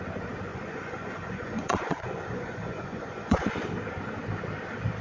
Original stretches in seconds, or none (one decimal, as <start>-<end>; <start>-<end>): 0.0-0.5; 3.5-5.0